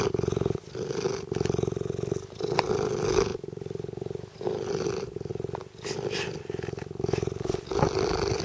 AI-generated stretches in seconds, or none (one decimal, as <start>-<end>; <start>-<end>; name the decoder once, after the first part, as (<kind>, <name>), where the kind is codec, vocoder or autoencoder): 3.3-5.3 (vocoder, BigVGAN v2)